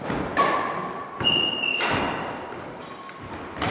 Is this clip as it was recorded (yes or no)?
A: yes